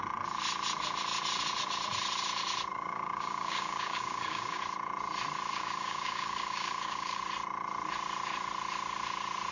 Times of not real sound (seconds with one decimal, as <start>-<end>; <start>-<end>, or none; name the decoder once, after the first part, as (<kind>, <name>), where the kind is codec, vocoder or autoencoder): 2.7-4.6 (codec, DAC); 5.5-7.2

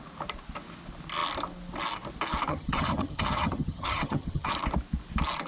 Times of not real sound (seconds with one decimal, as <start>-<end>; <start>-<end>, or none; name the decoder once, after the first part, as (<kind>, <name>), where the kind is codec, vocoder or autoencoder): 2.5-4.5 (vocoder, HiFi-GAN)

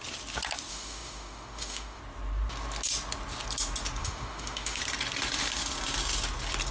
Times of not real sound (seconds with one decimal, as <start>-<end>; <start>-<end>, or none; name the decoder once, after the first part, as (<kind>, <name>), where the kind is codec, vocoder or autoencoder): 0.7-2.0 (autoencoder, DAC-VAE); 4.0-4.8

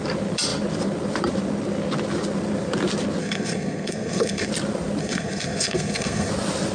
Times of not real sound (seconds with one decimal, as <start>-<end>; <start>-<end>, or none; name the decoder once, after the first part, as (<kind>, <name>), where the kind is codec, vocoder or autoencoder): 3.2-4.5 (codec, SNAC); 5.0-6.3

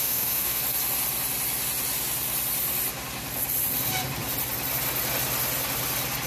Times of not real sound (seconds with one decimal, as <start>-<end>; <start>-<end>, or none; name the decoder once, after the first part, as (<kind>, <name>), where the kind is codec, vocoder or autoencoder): 0.0-0.6 (autoencoder, DAC-VAE)

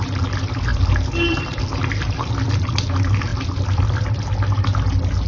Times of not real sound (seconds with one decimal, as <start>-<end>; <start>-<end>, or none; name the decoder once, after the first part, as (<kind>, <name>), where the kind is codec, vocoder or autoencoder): 0.7-2.9 (vocoder, BigVGAN v2)

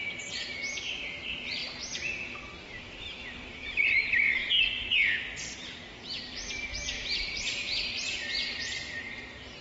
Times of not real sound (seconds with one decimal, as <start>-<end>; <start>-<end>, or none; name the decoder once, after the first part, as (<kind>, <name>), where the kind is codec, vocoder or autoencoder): 0.0-1.6 (vocoder, BigVGAN v2); 2.7-4.4; 5.2-9.6

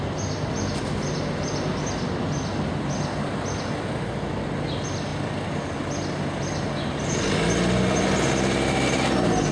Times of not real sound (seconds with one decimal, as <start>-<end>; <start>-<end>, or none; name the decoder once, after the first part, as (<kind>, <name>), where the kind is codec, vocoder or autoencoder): none